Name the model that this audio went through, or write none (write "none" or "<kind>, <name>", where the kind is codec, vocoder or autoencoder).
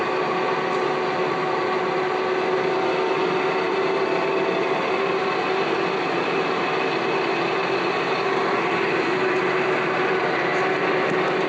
none